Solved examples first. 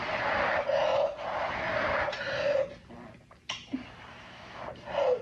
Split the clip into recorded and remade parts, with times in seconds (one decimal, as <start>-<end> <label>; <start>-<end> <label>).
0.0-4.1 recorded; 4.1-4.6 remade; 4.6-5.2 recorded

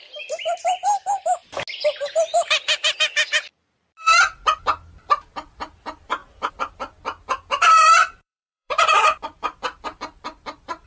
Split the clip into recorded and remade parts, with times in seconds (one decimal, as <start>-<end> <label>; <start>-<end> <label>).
0.0-8.0 recorded; 8.0-9.4 remade; 9.4-10.9 recorded

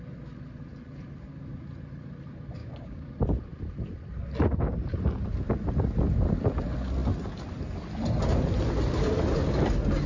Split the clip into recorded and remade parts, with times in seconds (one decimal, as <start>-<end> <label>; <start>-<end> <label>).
0.0-2.6 recorded; 2.6-3.1 remade; 3.1-10.1 recorded

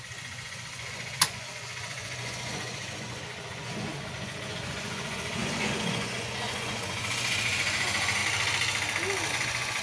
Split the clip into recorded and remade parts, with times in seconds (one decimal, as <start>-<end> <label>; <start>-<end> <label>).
0.0-8.2 remade; 8.2-9.3 recorded; 9.3-9.8 remade

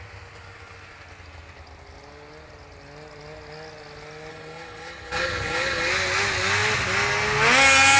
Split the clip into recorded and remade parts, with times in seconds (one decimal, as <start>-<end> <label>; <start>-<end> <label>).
0.0-4.3 recorded; 4.3-5.9 remade; 5.9-8.0 recorded

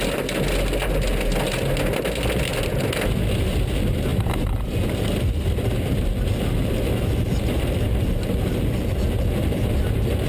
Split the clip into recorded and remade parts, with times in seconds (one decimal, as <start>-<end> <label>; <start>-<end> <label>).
0.0-10.3 recorded

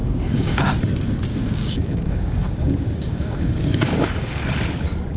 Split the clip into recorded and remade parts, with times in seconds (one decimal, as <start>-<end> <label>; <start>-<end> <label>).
0.0-0.6 remade; 0.6-1.3 recorded; 1.3-4.4 remade; 4.4-5.2 recorded